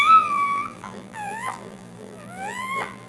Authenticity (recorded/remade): remade